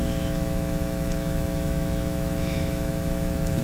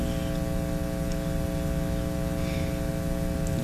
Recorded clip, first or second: second